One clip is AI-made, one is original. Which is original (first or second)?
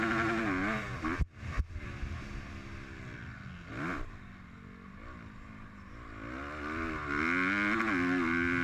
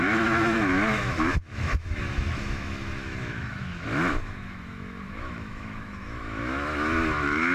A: first